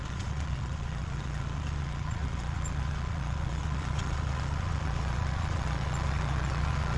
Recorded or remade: remade